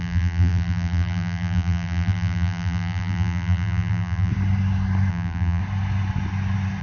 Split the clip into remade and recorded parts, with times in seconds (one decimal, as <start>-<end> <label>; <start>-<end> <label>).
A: 0.0-4.3 remade; 4.3-5.1 recorded; 5.1-5.6 remade; 5.6-6.8 recorded